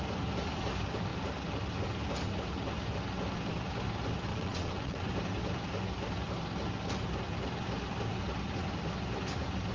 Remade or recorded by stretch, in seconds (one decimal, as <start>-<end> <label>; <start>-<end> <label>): 0.0-4.3 recorded; 4.3-5.1 remade; 5.1-9.7 recorded